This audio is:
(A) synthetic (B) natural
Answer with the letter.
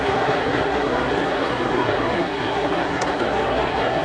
A